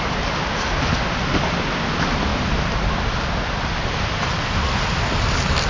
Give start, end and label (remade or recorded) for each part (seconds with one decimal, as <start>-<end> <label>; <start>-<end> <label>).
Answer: 0.0-5.7 recorded